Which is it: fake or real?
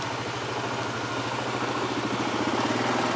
real